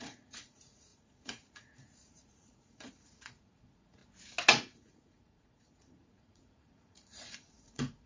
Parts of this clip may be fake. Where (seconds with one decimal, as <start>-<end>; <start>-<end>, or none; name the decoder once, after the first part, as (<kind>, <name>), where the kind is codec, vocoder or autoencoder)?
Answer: 0.0-4.0 (vocoder, Vocos); 4.5-8.1